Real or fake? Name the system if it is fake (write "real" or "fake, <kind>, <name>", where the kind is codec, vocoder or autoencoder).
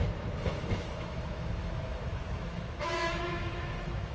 fake, autoencoder, DAC-VAE